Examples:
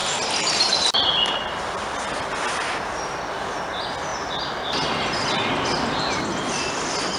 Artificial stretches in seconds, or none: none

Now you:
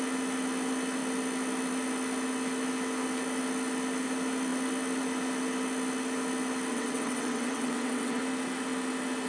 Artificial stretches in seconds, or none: 6.7-8.2 (vocoder, WaveNeXt)

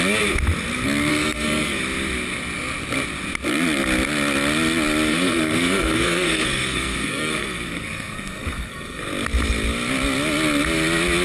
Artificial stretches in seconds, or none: 1.1-1.8 (codec, SNAC); 5.1-9.0

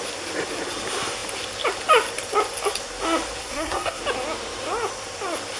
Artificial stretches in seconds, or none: 3.4-4.0 (codec, SNAC)